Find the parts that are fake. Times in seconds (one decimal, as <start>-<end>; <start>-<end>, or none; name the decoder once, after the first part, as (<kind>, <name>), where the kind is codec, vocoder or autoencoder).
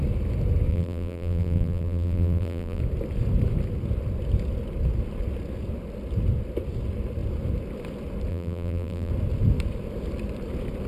0.7-2.8 (vocoder, BigVGAN v2); 8.3-9.1